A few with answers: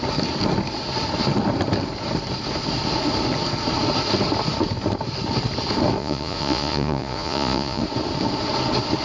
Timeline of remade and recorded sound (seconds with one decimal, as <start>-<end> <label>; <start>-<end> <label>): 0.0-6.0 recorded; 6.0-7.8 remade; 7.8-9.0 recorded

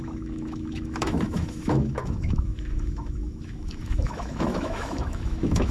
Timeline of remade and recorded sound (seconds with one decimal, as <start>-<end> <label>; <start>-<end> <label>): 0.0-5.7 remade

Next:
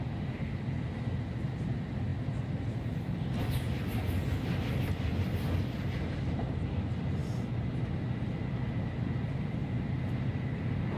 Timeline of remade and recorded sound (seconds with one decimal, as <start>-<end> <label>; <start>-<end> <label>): 0.0-11.0 recorded

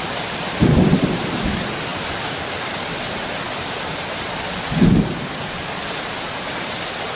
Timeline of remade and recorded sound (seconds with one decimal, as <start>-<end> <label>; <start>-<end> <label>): 0.0-7.2 recorded

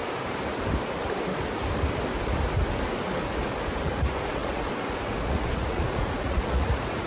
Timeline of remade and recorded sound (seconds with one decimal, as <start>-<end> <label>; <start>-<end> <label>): 0.0-3.8 recorded; 3.8-7.1 remade

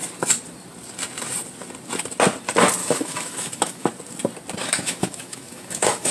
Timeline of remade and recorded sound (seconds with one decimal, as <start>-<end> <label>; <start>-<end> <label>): 0.0-2.8 recorded; 2.8-3.9 remade; 3.9-4.6 recorded; 4.6-6.1 remade